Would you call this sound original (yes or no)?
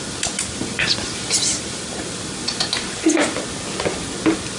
yes